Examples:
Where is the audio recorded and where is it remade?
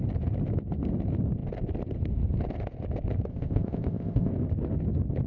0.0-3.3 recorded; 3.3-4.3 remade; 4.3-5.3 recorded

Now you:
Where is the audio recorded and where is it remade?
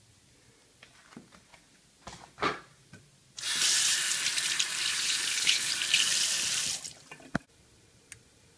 0.0-4.9 recorded; 4.9-5.7 remade; 5.7-8.6 recorded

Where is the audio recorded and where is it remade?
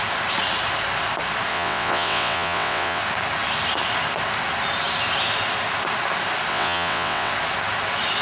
0.0-1.5 recorded; 1.5-3.0 remade; 3.0-6.5 recorded; 6.5-7.3 remade; 7.3-8.2 recorded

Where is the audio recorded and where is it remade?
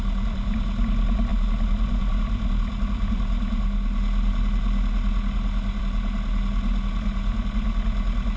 0.0-8.4 recorded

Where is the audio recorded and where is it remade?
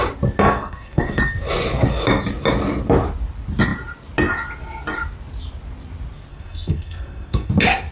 0.0-0.4 recorded; 0.4-1.2 remade; 1.2-6.3 recorded; 6.3-7.5 remade; 7.5-7.9 recorded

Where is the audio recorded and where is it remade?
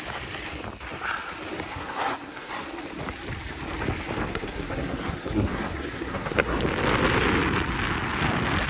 0.0-1.7 recorded; 1.7-2.5 remade; 2.5-4.3 recorded; 4.3-6.6 remade; 6.6-8.7 recorded